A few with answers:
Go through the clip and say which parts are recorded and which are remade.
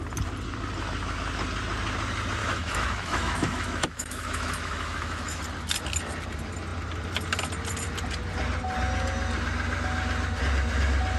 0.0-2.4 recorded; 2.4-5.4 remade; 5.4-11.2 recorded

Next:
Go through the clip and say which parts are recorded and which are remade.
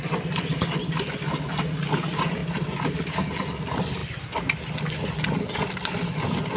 0.0-6.6 recorded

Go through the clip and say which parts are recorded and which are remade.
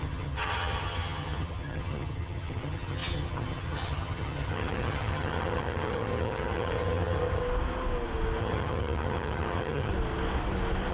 0.0-7.4 remade; 7.4-8.4 recorded; 8.4-9.9 remade; 9.9-10.9 recorded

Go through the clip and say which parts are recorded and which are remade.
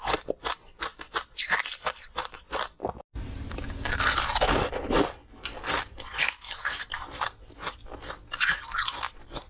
0.0-6.2 recorded; 6.2-6.9 remade; 6.9-9.5 recorded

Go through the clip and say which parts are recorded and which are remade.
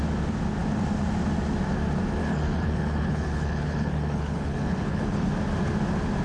0.0-2.2 recorded; 2.2-5.3 remade; 5.3-6.2 recorded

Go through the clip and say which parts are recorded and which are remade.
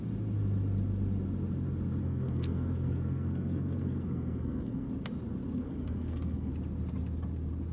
0.0-2.0 recorded; 2.0-4.9 remade; 4.9-5.6 recorded; 5.6-6.5 remade; 6.5-7.7 recorded